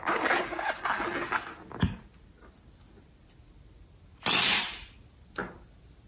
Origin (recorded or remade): recorded